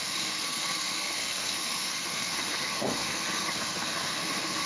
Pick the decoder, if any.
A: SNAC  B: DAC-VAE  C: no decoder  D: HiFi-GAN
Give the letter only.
A